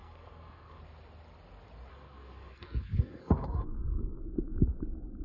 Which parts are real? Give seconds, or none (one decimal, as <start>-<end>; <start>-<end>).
0.8-1.9; 4.2-5.2